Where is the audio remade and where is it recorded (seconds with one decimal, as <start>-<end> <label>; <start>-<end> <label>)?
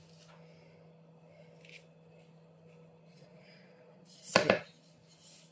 0.0-3.1 recorded; 3.1-4.4 remade; 4.4-5.5 recorded